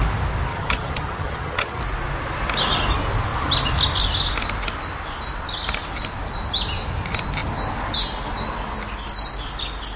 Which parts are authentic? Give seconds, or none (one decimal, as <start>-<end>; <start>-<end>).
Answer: 0.0-0.5; 1.8-10.0